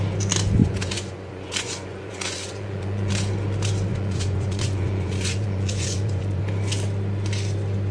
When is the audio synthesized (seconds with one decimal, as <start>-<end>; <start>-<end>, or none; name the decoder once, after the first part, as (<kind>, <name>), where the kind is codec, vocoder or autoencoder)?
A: 0.6-3.1 (vocoder, Vocos); 3.9-6.4